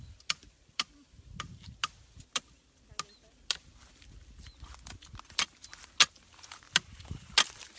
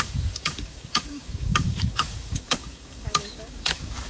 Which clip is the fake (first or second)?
second